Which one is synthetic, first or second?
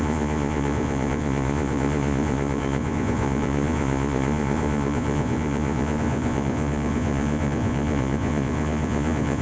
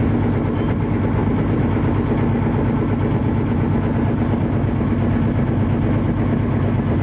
first